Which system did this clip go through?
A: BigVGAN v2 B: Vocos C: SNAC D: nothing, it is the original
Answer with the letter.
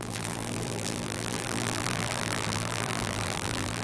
A